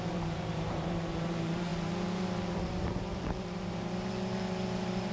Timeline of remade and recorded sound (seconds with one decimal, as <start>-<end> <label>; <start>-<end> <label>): 0.0-5.1 remade